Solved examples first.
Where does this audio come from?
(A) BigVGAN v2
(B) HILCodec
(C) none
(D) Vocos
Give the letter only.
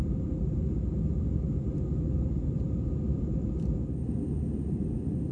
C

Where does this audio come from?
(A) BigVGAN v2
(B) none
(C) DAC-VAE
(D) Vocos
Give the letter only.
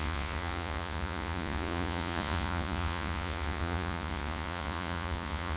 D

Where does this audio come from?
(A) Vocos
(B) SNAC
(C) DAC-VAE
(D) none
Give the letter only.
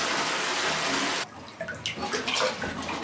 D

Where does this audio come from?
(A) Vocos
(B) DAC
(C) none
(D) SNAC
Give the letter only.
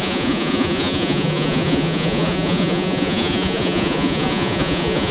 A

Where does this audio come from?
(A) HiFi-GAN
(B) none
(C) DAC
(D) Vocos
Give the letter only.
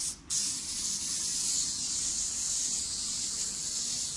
B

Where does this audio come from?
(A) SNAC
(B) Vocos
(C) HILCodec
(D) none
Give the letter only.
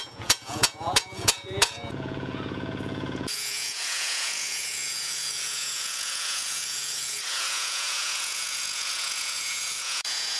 B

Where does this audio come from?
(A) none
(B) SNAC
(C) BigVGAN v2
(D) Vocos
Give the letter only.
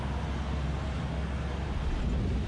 A